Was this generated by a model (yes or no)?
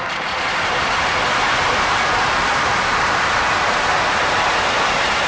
yes